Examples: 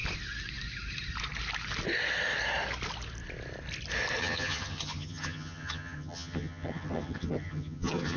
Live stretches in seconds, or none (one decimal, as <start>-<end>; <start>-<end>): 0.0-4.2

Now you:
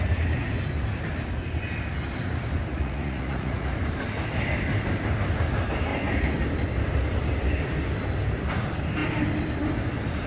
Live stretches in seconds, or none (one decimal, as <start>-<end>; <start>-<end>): 0.0-2.7; 3.7-10.3

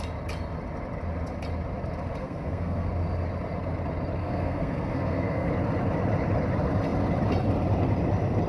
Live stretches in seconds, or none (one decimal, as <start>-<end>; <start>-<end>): 0.0-2.2; 2.9-4.2; 5.5-8.5